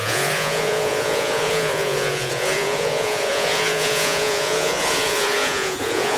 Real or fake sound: fake